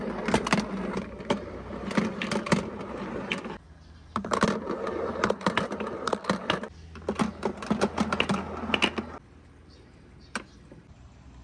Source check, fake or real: real